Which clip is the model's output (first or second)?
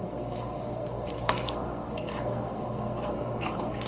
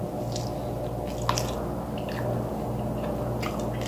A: first